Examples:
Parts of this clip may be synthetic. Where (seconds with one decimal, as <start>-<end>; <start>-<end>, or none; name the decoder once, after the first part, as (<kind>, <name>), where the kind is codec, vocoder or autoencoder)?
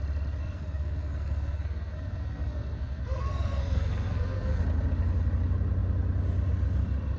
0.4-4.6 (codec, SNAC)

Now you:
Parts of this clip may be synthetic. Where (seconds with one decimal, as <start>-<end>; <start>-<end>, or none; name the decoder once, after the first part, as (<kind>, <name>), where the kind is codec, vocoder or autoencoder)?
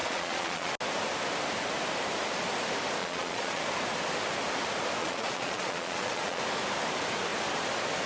0.0-0.7 (vocoder, Vocos); 3.0-3.6; 5.0-6.4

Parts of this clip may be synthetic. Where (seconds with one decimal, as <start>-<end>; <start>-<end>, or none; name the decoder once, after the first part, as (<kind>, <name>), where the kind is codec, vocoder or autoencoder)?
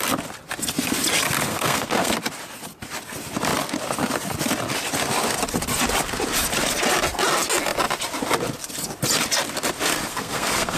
1.5-2.1 (codec, SNAC); 10.1-10.8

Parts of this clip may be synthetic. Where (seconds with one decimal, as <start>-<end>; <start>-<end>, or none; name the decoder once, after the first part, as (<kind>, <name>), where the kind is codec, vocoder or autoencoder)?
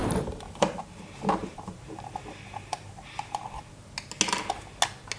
0.0-0.8 (vocoder, BigVGAN v2); 1.4-3.4